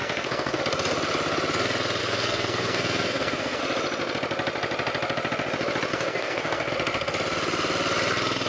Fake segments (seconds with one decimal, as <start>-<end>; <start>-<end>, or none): 0.0-0.6; 2.0-3.6; 5.9-6.7